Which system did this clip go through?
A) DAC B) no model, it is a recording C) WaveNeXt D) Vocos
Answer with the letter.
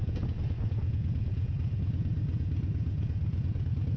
D